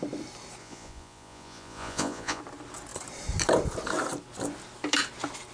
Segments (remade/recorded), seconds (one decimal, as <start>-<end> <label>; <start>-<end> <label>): 0.0-0.6 recorded; 0.6-2.4 remade; 2.4-5.5 recorded